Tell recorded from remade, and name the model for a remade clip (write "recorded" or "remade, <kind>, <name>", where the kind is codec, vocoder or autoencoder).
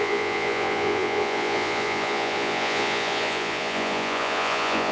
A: remade, vocoder, Vocos